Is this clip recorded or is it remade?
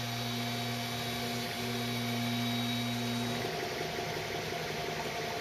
recorded